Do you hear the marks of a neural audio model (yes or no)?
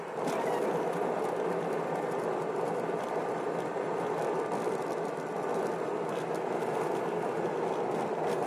no